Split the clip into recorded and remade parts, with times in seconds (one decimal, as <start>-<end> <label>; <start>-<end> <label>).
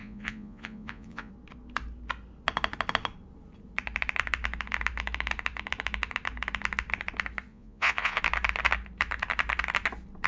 0.0-1.3 remade; 1.3-7.5 recorded; 7.5-8.2 remade; 8.2-10.3 recorded